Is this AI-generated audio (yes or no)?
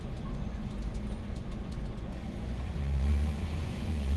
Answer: yes